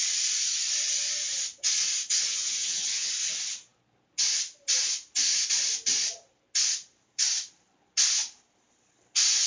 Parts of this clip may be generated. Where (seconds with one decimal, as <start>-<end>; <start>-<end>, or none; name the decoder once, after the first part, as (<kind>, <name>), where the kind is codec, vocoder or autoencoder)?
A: 2.3-3.1 (vocoder, HiFi-GAN)